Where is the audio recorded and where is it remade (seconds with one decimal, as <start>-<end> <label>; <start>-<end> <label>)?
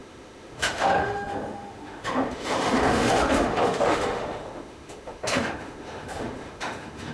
0.0-7.1 remade